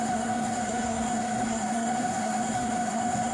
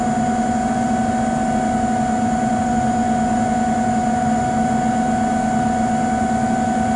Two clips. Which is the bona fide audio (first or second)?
second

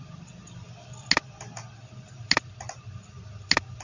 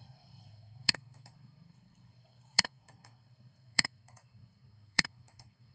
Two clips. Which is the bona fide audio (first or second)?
first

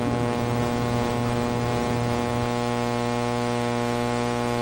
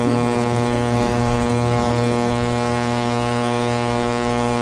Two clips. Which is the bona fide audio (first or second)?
first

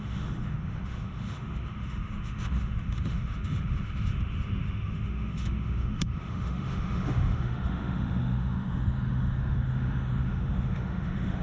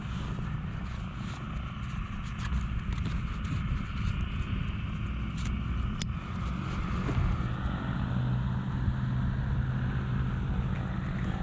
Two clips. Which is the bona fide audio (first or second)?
second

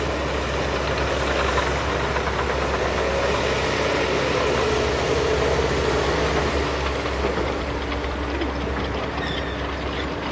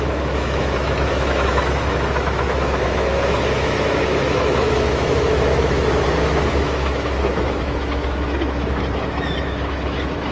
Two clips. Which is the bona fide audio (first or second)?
first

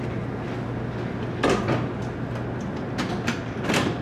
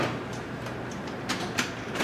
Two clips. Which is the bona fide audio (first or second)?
first